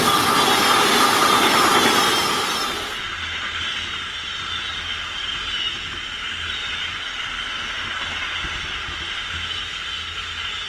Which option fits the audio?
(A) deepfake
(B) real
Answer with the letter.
B